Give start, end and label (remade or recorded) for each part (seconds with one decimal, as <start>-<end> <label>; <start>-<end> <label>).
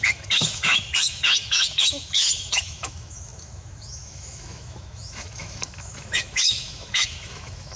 0.0-7.8 remade